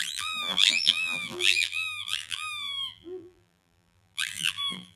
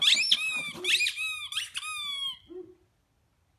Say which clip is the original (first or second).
second